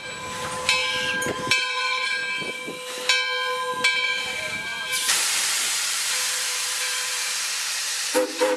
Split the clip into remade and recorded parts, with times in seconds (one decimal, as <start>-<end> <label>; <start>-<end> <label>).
0.0-2.2 remade; 2.2-4.2 recorded; 4.2-8.6 remade